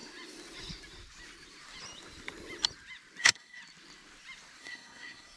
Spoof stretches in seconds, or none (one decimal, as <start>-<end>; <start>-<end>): 3.2-3.6; 4.6-5.4